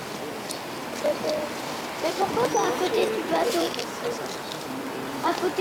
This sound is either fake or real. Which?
real